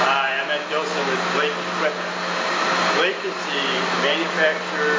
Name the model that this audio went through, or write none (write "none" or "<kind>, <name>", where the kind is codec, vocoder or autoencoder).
none